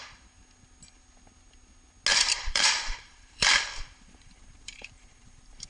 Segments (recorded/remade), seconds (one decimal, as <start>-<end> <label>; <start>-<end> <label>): 0.0-2.1 recorded; 2.1-5.7 remade